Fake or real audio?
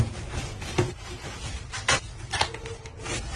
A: real